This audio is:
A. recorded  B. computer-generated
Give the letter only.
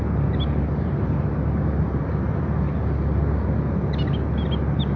A